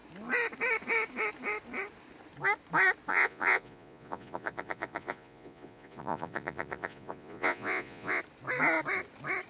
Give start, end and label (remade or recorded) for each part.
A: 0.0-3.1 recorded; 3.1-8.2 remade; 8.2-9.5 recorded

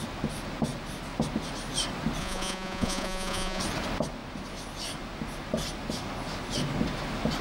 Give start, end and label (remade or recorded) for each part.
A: 0.0-2.2 recorded; 2.2-3.6 remade; 3.6-7.4 recorded

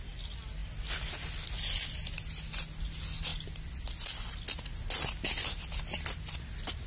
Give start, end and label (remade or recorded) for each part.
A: 0.0-6.9 recorded

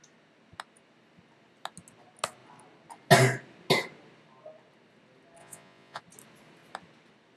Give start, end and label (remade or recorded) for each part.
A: 0.0-5.4 recorded; 5.4-6.0 remade; 6.0-7.4 recorded

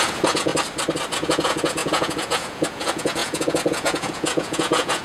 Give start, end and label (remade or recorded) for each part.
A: 0.0-0.5 remade; 0.5-1.1 recorded; 1.1-5.0 remade

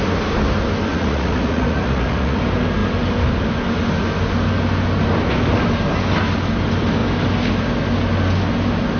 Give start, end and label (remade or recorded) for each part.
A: 0.0-0.9 recorded; 0.9-2.4 remade; 2.4-9.0 recorded